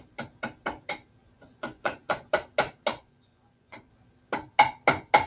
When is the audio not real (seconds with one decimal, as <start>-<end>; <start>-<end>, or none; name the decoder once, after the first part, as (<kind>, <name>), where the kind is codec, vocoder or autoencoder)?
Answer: 1.2-2.3 (vocoder, Vocos); 2.9-3.9